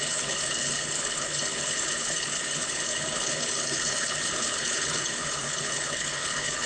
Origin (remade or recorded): remade